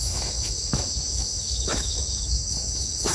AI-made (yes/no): yes